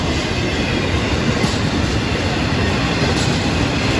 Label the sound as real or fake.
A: real